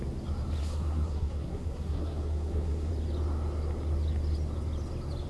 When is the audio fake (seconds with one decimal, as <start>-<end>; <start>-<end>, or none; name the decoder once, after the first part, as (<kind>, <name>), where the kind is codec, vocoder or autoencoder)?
0.6-2.9 (codec, SNAC)

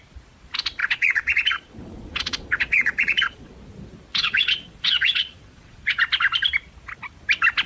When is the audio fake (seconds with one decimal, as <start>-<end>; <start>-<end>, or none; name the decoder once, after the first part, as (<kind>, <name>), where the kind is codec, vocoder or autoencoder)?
0.8-3.5 (vocoder, Vocos); 4.1-6.0

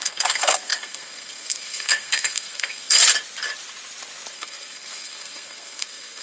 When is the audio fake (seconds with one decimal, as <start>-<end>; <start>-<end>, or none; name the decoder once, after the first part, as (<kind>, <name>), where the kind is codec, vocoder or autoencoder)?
0.0-3.0 (codec, SNAC); 4.3-6.2